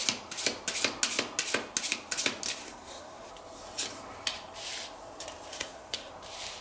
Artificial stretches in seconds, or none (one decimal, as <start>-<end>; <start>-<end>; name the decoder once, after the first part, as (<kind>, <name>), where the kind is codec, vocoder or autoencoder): 2.6-3.3 (codec, SNAC); 5.5-6.1